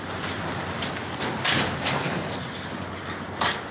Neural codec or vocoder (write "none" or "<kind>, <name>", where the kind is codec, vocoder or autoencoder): none